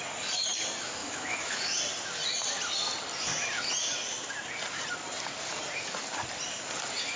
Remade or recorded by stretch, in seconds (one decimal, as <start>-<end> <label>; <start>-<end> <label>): 0.0-1.0 recorded; 1.0-1.8 remade; 1.8-7.2 recorded